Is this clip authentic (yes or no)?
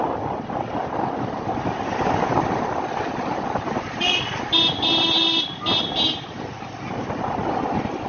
yes